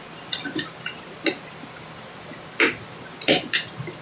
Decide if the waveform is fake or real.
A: real